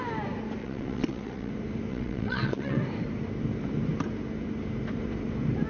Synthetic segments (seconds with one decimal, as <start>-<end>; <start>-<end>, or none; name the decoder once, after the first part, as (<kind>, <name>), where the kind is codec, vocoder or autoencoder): 0.6-1.5 (vocoder, WaveNeXt); 1.9-2.8

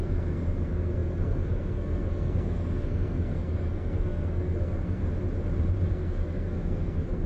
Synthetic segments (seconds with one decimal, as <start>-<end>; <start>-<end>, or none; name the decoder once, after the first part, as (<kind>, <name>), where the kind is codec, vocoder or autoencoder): 0.0-5.0 (codec, SNAC); 5.9-7.3

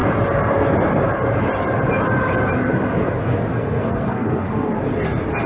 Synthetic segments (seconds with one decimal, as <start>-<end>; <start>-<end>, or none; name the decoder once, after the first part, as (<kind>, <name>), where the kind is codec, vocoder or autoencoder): 3.5-4.7 (codec, SNAC)

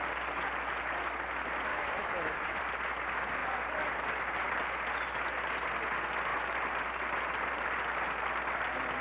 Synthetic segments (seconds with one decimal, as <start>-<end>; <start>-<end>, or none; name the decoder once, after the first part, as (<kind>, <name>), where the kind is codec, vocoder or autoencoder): 1.7-2.6 (autoencoder, DAC-VAE)

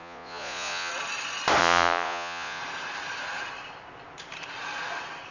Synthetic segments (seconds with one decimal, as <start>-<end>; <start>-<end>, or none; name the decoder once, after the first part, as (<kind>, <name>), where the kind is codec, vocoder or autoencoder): 0.0-0.9 (vocoder, Vocos); 1.6-2.6

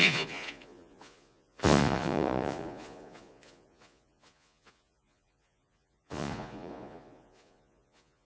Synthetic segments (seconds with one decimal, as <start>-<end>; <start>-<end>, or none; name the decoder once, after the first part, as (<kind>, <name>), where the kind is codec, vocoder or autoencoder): 0.0-8.2 (vocoder, Vocos)

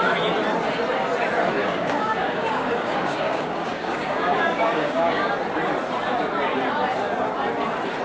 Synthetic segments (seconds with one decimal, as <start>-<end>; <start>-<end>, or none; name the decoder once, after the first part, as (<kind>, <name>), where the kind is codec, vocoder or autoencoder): 1.6-5.3 (codec, DAC)

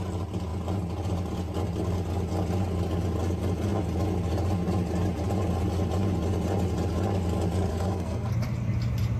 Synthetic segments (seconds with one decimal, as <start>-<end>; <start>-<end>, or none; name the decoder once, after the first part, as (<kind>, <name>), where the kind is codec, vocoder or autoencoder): 7.7-8.3 (codec, SNAC)